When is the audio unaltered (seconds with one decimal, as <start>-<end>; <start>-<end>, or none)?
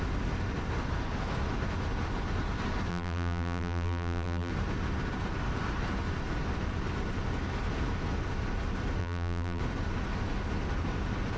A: 0.0-2.9; 4.5-9.0; 9.6-11.4